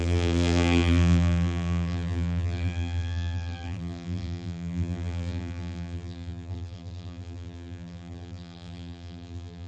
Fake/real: fake